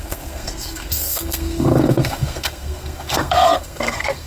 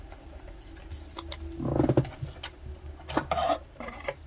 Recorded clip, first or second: second